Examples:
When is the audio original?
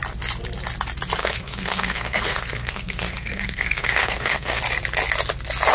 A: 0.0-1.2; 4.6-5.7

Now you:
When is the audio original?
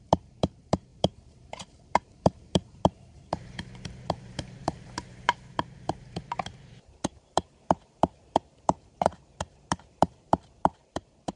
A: none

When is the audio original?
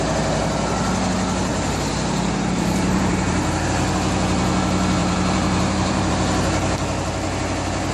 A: 0.0-1.5; 3.6-5.0; 6.1-7.9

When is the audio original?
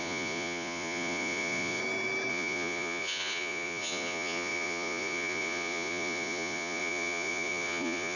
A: 1.8-2.3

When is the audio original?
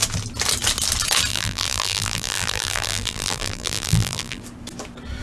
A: 0.0-1.3; 4.4-5.2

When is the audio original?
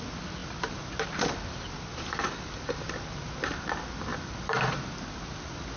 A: 0.0-4.1; 4.8-5.8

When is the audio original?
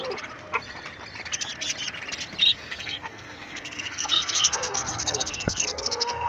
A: 0.0-2.5